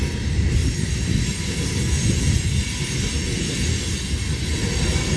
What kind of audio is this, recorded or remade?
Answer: recorded